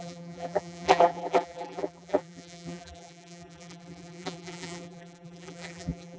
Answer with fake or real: fake